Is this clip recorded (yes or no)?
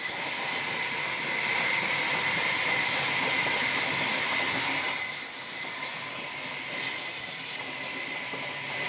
yes